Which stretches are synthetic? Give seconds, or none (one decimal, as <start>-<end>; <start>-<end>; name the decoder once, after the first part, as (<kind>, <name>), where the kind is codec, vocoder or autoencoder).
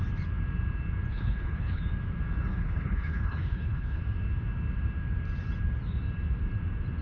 1.1-1.8 (codec, HILCodec); 2.5-4.0